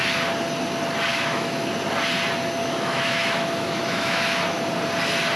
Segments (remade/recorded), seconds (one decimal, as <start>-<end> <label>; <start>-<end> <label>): 0.0-1.1 recorded; 1.1-1.7 remade; 1.7-2.6 recorded; 2.6-4.6 remade; 4.6-5.4 recorded